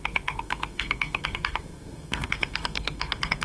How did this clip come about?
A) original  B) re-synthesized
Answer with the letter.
B